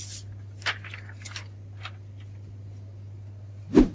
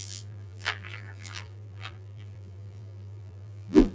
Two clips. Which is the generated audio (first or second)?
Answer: second